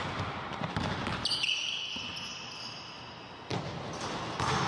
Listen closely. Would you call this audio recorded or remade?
recorded